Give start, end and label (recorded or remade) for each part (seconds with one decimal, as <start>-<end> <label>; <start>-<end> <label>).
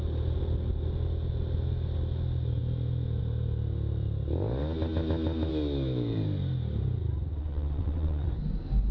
0.0-7.4 recorded; 7.4-8.3 remade; 8.3-8.9 recorded